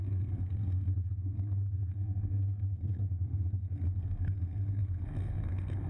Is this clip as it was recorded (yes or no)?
no